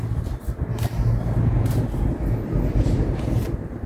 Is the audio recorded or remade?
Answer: recorded